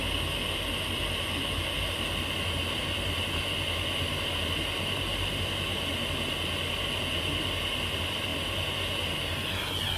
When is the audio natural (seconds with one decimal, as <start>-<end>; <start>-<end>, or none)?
0.0-10.0